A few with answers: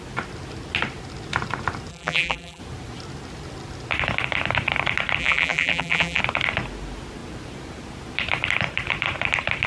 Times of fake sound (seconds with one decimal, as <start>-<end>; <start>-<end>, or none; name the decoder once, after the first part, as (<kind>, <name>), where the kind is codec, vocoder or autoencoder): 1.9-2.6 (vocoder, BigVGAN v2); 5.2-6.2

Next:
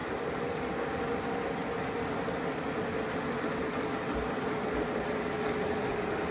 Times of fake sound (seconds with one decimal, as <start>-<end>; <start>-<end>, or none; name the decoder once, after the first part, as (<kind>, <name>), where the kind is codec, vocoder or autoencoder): none

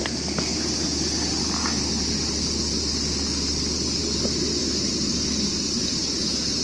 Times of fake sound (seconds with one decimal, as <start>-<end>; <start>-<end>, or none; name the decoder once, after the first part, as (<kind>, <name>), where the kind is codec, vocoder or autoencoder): none

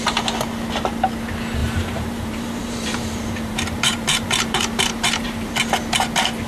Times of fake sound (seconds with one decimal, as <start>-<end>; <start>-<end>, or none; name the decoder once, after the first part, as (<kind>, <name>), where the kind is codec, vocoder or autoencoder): 1.6-5.5 (vocoder, BigVGAN v2)